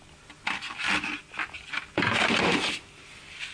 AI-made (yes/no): no